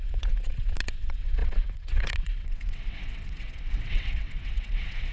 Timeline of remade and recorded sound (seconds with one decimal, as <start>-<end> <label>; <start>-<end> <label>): 0.0-5.1 remade